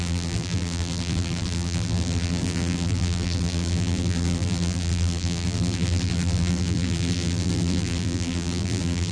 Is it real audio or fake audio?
fake